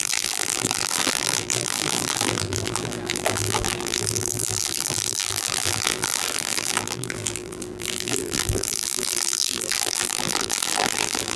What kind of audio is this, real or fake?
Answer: fake